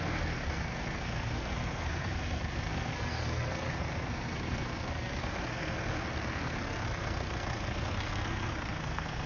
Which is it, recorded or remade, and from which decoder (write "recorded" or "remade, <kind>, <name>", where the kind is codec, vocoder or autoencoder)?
remade, codec, SNAC